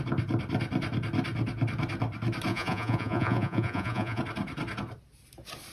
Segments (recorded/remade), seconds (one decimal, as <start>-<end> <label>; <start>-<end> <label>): 0.0-2.5 recorded; 2.5-4.2 remade; 4.2-5.7 recorded